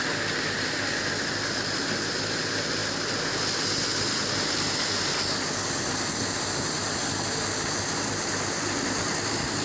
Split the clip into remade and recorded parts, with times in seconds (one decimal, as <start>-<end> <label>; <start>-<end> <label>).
0.0-9.6 recorded